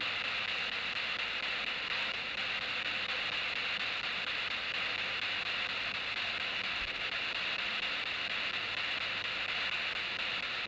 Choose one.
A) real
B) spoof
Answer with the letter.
A